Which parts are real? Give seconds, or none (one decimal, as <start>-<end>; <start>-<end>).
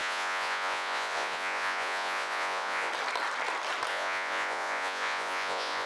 2.9-3.9